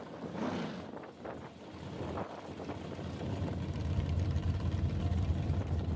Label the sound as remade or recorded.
recorded